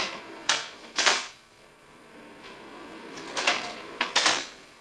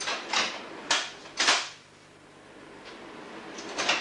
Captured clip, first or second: second